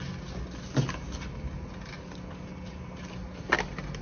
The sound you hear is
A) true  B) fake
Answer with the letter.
A